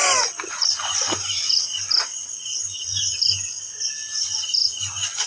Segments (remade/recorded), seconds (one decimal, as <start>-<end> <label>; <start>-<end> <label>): 0.0-5.3 recorded